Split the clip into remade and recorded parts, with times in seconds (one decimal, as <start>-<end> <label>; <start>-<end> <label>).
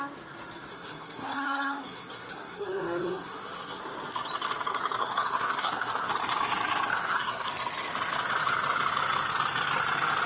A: 0.0-0.7 recorded; 0.7-3.8 remade; 3.8-5.0 recorded; 5.0-6.1 remade; 6.1-6.9 recorded; 6.9-7.5 remade; 7.5-10.3 recorded